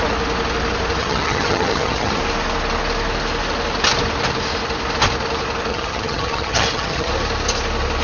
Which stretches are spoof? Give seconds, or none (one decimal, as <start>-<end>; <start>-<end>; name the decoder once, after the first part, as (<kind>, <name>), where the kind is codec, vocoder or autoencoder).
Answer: 1.0-2.2 (vocoder, HiFi-GAN); 5.7-7.1